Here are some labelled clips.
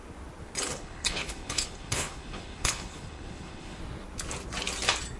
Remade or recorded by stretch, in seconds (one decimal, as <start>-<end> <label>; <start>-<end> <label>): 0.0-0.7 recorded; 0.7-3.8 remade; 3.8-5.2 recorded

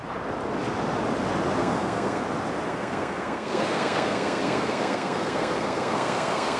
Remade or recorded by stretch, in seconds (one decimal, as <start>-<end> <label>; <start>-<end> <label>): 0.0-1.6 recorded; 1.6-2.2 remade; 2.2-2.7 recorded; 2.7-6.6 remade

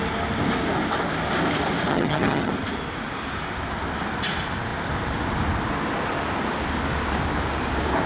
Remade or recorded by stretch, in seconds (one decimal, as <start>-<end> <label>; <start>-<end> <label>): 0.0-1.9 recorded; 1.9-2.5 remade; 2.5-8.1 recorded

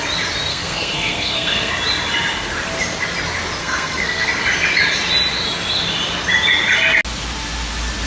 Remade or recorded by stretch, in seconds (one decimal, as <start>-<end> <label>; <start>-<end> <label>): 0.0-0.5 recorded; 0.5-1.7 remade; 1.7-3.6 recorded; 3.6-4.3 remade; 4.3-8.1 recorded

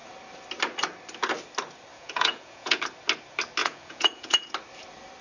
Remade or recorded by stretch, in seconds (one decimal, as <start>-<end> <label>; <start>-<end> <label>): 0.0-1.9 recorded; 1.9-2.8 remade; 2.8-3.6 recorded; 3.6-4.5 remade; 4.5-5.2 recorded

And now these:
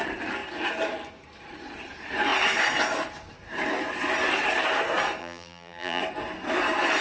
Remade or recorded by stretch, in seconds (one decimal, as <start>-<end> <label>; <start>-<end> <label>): 0.0-5.2 recorded; 5.2-6.0 remade; 6.0-7.0 recorded

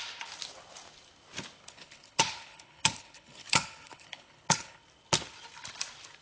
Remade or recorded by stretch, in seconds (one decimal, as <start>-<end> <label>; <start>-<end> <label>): 0.0-1.6 recorded; 1.6-4.8 remade; 4.8-6.2 recorded

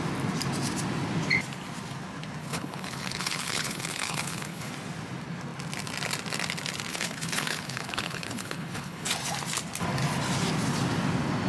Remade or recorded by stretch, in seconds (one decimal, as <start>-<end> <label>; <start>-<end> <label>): 0.0-2.4 recorded; 2.4-4.7 remade; 4.7-6.9 recorded; 6.9-9.1 remade; 9.1-11.5 recorded